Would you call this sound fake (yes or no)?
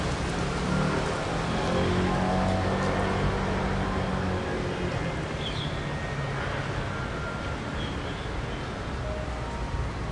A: no